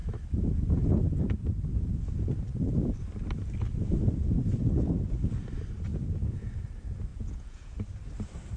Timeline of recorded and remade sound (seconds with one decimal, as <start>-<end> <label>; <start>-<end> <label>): 0.0-5.9 recorded; 5.9-6.5 remade; 6.5-7.1 recorded; 7.1-7.8 remade; 7.8-8.6 recorded